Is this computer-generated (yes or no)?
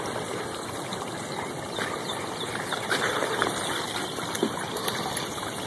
no